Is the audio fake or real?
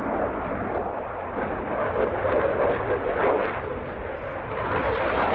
real